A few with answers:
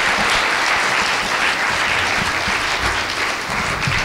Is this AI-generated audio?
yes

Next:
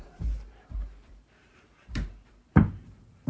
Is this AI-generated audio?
yes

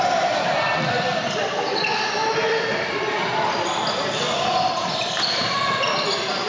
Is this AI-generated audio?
yes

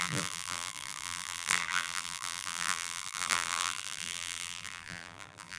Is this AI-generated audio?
yes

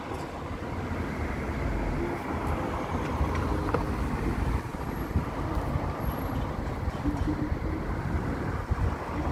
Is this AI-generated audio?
no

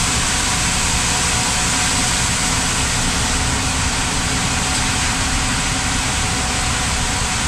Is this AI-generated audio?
no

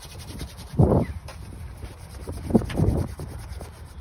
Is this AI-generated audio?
yes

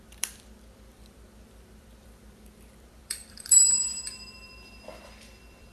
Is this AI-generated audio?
yes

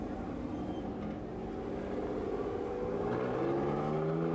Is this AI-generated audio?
no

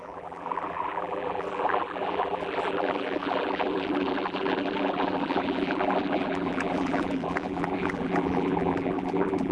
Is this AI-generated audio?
yes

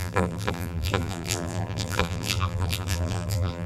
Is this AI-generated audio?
yes